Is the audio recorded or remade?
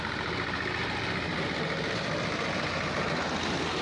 recorded